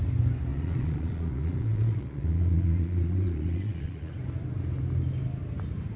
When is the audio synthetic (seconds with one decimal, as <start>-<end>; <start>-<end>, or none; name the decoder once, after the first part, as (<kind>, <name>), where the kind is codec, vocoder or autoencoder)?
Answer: 0.5-4.1 (vocoder, Vocos)